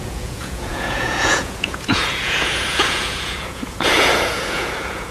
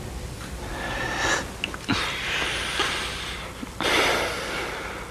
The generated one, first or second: first